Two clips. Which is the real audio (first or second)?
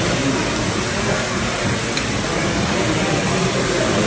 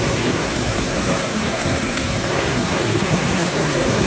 first